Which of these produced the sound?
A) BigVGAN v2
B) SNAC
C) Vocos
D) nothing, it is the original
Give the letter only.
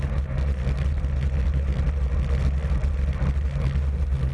D